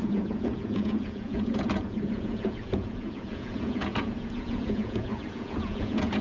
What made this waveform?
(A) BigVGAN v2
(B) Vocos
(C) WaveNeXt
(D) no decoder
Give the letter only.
B